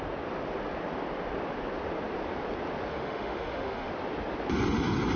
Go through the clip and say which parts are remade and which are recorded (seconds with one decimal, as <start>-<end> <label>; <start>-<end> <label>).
0.0-2.9 recorded; 2.9-3.9 remade; 3.9-5.2 recorded